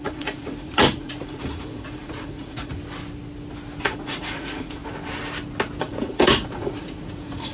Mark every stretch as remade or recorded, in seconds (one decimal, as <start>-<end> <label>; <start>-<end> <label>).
0.0-2.7 remade; 2.7-3.8 recorded; 3.8-4.8 remade; 4.8-5.8 recorded; 5.8-7.5 remade